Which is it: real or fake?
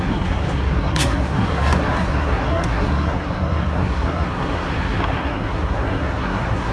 fake